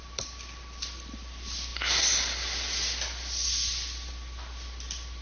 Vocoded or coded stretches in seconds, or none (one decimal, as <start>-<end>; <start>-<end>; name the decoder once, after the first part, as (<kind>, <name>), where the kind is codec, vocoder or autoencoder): none

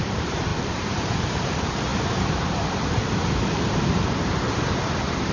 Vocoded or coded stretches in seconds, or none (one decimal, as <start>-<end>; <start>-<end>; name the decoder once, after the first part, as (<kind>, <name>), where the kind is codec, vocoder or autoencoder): 0.0-5.3 (vocoder, BigVGAN v2)

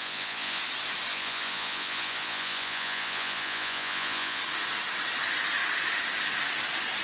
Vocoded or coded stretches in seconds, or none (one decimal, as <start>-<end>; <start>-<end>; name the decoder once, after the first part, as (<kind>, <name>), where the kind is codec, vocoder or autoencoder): 0.0-0.6 (vocoder, Vocos); 1.1-4.4

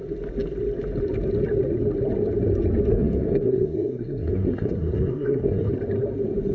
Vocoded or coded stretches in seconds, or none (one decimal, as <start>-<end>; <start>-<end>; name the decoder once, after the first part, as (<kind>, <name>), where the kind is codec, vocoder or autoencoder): 2.9-5.7 (codec, SNAC)

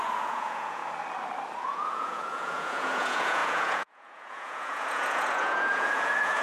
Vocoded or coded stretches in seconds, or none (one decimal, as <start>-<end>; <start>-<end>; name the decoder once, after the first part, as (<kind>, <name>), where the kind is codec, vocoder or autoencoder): 0.0-0.8 (vocoder, Vocos); 1.6-6.4

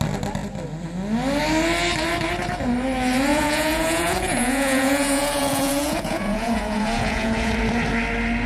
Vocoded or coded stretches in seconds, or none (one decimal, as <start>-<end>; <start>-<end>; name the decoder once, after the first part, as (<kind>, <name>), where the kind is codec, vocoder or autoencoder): 3.3-7.5 (vocoder, Vocos)